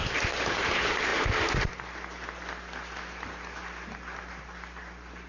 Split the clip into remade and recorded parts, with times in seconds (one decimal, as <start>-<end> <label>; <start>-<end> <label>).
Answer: 0.0-5.3 recorded